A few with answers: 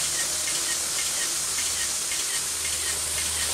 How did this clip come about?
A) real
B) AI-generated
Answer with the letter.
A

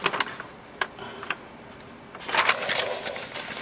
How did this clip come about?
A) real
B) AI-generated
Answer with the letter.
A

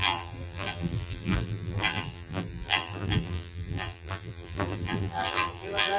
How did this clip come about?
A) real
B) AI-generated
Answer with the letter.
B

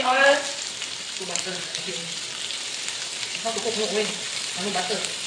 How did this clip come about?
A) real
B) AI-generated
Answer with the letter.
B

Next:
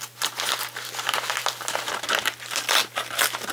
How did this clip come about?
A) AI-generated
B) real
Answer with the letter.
B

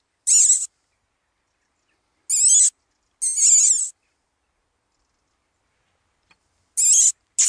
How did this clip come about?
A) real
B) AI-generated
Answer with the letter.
A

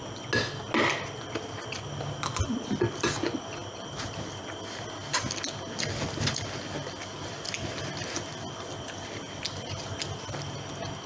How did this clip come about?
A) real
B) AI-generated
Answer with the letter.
A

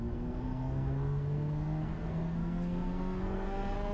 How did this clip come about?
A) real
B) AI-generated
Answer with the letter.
B